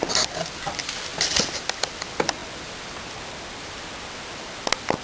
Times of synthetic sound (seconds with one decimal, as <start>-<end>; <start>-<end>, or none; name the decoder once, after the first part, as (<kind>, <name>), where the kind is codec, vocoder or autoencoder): none